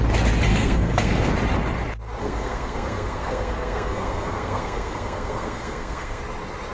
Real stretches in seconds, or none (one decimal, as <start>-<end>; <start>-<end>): 0.0-0.5; 1.3-2.2; 6.2-6.7